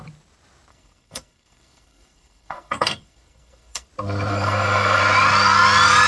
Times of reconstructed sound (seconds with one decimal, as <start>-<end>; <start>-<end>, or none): 0.7-3.9; 4.3-5.0